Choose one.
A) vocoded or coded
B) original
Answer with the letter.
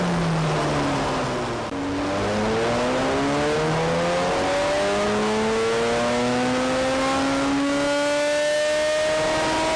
B